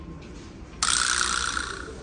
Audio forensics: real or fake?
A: real